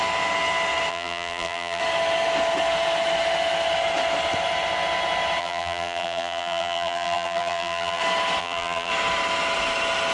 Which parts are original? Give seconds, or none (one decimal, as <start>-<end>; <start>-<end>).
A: 0.0-0.9; 1.8-5.4; 8.0-8.4; 8.9-10.1